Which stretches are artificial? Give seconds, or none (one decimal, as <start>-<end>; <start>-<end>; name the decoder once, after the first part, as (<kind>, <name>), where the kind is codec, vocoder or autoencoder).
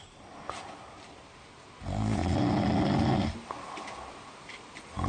none